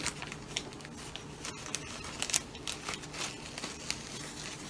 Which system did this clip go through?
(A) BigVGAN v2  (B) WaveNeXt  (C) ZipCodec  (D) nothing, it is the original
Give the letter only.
D